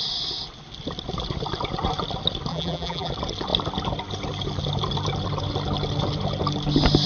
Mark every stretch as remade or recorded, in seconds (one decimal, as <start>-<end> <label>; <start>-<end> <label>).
0.0-2.5 recorded; 2.5-3.1 remade; 3.1-7.1 recorded